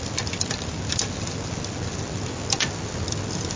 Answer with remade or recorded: recorded